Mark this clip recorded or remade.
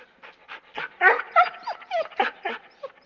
recorded